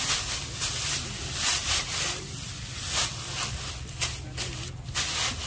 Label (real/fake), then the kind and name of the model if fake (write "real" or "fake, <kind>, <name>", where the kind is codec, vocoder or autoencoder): real